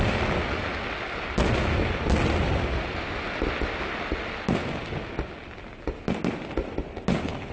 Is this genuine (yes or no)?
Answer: yes